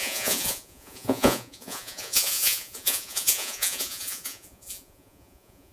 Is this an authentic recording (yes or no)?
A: no